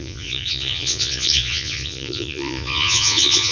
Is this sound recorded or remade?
remade